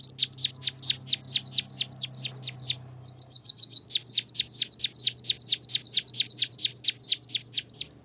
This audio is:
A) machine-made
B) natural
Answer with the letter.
B